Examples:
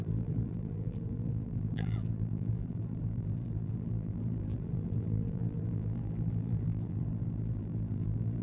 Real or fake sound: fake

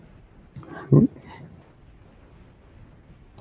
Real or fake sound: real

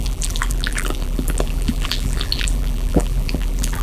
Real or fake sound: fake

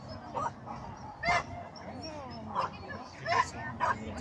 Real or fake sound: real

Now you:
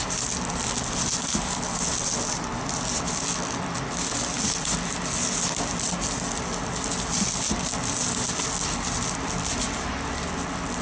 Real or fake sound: real